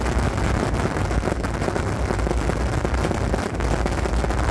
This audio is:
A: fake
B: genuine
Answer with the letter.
B